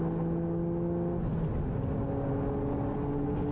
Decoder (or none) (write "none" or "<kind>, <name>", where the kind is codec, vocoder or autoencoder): none